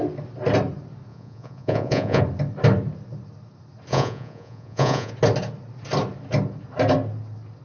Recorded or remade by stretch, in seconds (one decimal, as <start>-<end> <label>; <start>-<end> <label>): 0.0-1.1 recorded; 1.1-2.2 remade; 2.2-3.9 recorded; 3.9-5.1 remade; 5.1-7.6 recorded